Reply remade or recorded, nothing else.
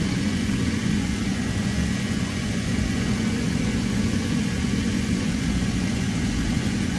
remade